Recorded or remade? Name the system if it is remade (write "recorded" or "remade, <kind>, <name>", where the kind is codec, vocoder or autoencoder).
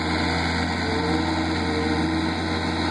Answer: recorded